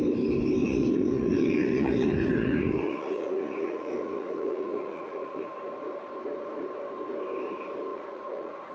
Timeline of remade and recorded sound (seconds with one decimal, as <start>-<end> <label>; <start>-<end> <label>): 0.0-0.6 recorded; 0.6-5.5 remade; 5.5-7.9 recorded; 7.9-8.7 remade